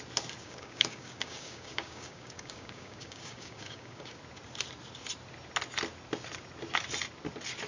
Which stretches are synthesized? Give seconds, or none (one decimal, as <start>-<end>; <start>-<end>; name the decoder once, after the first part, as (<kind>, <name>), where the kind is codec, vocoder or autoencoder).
0.4-4.2 (codec, DAC)